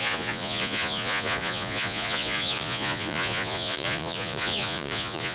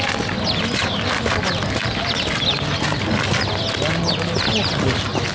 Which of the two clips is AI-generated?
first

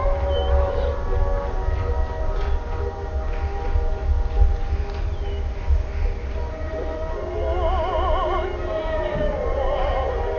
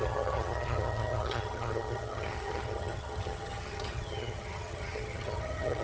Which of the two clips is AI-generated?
second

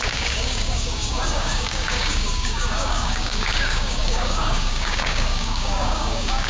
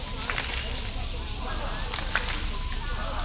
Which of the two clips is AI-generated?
first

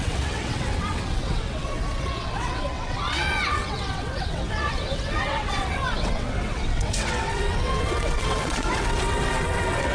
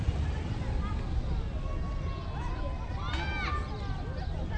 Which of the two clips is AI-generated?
first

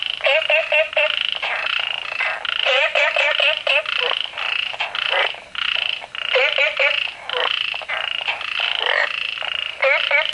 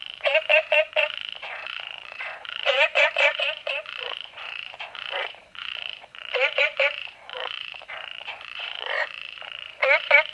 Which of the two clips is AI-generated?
second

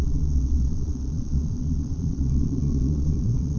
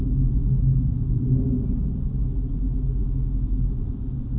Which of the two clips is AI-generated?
first